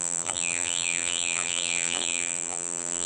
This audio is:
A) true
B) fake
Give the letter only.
B